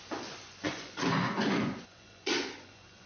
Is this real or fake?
fake